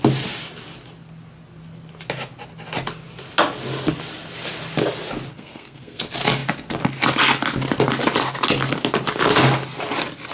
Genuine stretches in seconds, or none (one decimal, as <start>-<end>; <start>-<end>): 0.0-5.3; 6.0-10.3